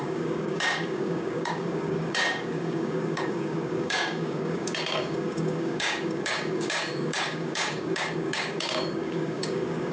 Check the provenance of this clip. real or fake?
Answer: fake